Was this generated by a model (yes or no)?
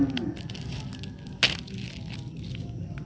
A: no